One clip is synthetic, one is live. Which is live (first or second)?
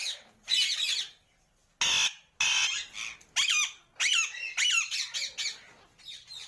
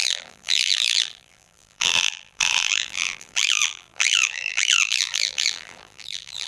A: first